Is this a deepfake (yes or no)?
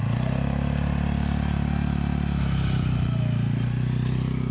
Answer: no